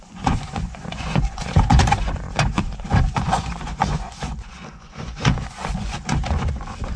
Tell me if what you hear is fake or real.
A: fake